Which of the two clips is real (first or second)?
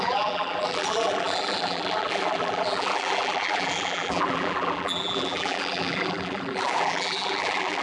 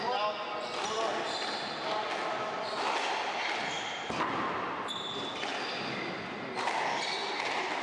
second